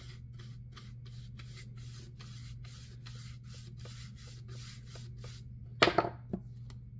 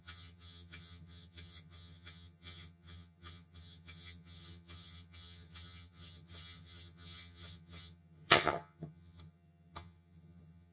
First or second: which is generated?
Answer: second